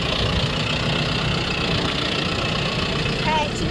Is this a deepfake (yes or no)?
no